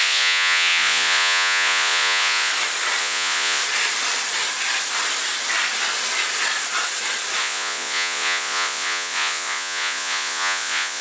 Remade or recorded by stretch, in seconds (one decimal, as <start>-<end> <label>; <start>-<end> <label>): 0.0-2.5 remade; 2.5-3.0 recorded; 3.0-3.6 remade; 3.6-7.4 recorded; 7.4-11.0 remade